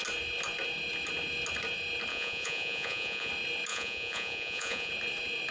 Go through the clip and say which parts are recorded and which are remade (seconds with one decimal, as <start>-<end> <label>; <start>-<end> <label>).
0.0-2.1 recorded; 2.1-3.3 remade; 3.3-3.7 recorded; 3.7-4.9 remade; 4.9-5.5 recorded